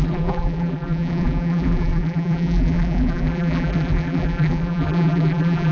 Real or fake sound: fake